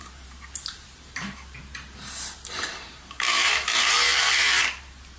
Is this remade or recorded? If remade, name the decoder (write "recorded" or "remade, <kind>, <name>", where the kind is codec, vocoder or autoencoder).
remade, vocoder, BigVGAN v2